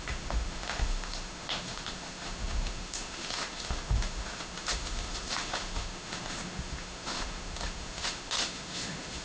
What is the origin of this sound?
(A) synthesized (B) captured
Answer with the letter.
A